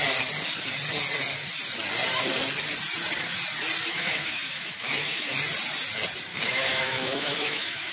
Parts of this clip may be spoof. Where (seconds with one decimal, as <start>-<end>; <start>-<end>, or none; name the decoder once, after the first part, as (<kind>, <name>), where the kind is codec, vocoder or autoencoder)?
3.9-5.3 (autoencoder, DAC-VAE); 6.3-7.9